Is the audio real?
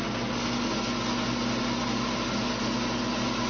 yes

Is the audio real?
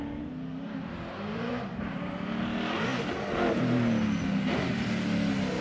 yes